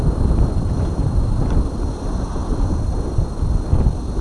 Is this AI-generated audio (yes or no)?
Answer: no